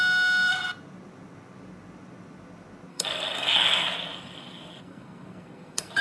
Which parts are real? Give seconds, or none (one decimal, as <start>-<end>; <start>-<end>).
0.0-2.9